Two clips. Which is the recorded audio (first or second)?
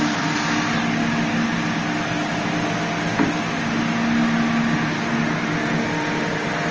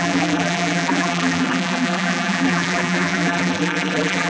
first